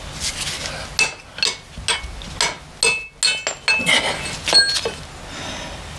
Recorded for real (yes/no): yes